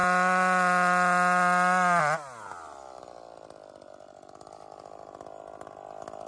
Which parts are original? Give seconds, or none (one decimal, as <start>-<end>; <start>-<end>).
0.0-6.3